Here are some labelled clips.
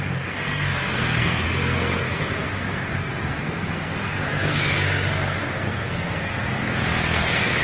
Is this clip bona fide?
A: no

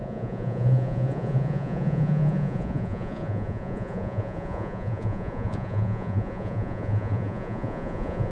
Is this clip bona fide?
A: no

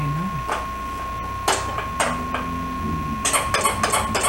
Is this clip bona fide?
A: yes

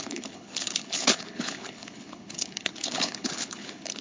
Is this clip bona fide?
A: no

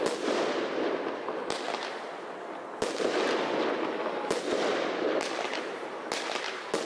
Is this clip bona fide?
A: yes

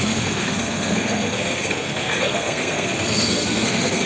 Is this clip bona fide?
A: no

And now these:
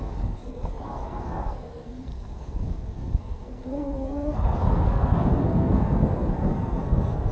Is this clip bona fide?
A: no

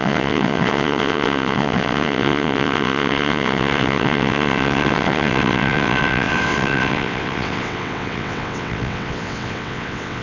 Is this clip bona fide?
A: no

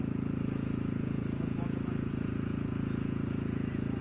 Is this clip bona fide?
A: no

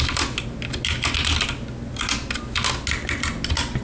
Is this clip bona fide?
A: yes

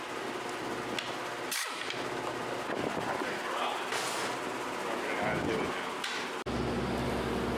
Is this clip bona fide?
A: yes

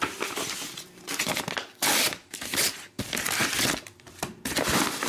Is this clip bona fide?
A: no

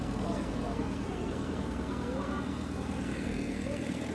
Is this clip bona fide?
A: no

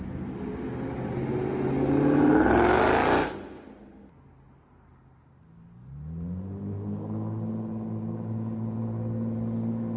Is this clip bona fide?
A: yes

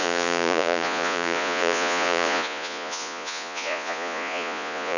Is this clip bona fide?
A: no